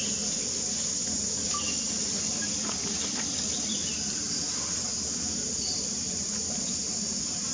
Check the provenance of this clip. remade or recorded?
recorded